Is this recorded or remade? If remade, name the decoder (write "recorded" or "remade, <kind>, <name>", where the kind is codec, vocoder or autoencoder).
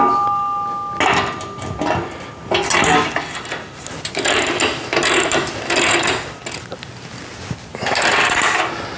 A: recorded